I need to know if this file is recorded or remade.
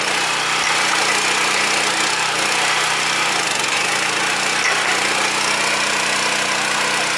recorded